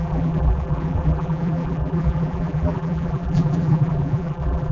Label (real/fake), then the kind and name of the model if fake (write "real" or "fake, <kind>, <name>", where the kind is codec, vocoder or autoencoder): fake, vocoder, BigVGAN v2